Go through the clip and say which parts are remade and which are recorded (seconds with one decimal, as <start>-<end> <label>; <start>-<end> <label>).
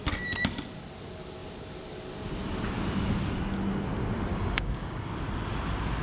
0.0-4.3 recorded; 4.3-5.1 remade; 5.1-6.0 recorded